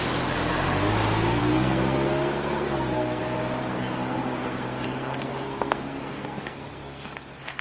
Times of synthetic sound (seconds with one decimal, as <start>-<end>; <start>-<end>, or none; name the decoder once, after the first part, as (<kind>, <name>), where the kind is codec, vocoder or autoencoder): 1.4-3.2 (codec, SNAC); 3.6-7.6